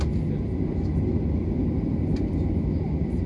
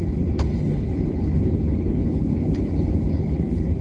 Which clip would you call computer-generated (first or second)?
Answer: second